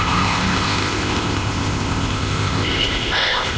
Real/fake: fake